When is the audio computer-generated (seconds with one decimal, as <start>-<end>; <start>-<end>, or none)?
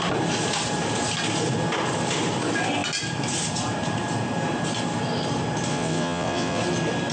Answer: 5.7-6.6